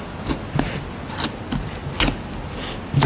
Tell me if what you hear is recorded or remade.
recorded